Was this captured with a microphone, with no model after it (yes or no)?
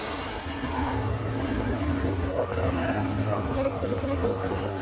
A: no